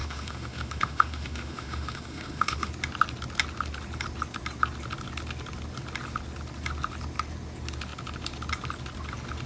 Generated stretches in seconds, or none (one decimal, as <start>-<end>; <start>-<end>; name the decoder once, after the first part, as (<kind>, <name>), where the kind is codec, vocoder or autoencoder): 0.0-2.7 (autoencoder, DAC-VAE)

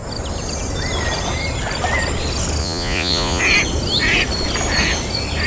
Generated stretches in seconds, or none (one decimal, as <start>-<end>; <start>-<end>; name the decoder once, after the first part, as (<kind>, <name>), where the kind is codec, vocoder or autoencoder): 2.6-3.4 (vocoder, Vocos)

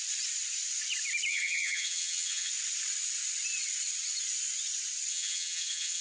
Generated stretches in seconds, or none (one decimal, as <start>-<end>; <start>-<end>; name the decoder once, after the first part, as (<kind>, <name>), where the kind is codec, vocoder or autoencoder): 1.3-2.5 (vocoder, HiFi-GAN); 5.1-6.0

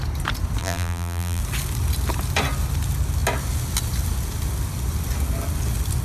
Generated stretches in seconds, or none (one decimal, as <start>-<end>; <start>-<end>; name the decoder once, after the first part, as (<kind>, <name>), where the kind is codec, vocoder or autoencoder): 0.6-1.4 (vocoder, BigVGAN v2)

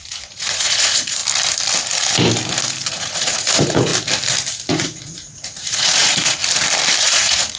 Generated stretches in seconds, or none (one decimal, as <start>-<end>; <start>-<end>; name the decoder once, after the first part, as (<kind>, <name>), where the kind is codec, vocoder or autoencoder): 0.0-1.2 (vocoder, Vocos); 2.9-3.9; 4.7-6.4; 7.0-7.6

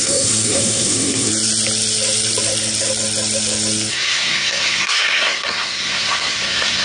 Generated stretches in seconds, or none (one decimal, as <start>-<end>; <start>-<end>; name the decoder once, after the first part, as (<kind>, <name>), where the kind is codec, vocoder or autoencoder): 0.0-1.3 (codec, SNAC); 3.9-6.8